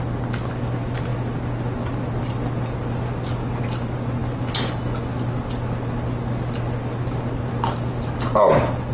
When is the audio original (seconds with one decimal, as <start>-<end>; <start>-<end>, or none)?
0.0-8.9